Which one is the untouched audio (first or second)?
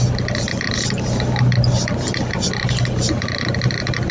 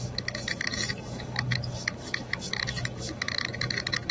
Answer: first